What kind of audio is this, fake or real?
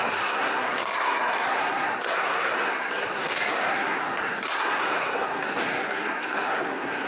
fake